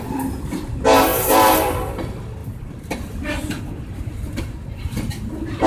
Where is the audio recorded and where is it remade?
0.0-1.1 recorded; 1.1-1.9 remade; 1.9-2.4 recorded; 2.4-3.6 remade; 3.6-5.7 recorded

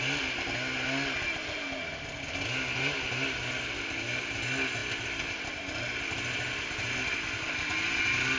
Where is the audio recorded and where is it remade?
0.0-8.4 recorded

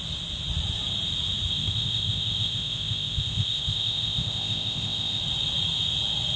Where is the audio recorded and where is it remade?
0.0-1.5 recorded; 1.5-5.2 remade; 5.2-6.4 recorded

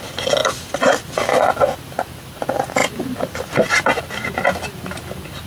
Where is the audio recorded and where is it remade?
0.0-5.5 recorded

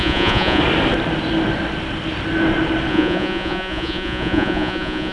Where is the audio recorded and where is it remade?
0.0-0.6 remade; 0.6-2.9 recorded; 2.9-5.1 remade

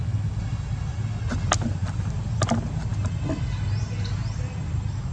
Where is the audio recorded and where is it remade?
0.0-5.1 recorded

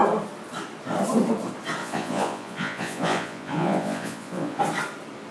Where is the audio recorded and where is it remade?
0.0-1.8 recorded; 1.8-4.6 remade; 4.6-5.3 recorded